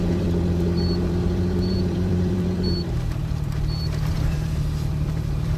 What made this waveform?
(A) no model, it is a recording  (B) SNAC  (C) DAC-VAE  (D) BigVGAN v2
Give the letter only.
D